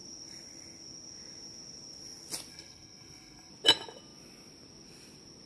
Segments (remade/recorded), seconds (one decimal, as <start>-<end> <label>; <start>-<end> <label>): 0.0-2.5 recorded; 2.5-3.5 remade; 3.5-5.5 recorded